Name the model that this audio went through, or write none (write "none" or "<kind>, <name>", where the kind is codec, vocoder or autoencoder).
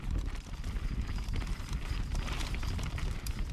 none